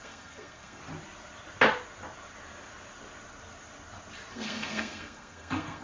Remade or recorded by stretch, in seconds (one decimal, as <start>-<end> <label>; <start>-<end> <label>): 0.0-0.8 remade; 0.8-4.3 recorded; 4.3-5.8 remade